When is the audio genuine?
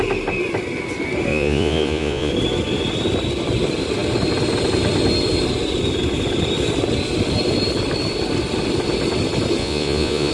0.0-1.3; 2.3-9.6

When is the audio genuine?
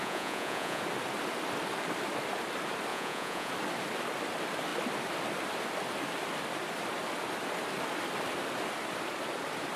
0.8-2.9; 3.5-9.8